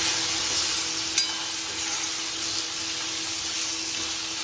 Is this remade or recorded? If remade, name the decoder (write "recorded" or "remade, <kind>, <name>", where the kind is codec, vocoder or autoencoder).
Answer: recorded